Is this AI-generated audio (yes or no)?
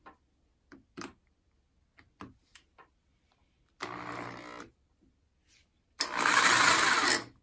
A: no